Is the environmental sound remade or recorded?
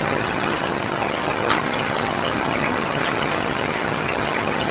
remade